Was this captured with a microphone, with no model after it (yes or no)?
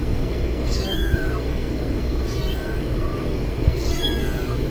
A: no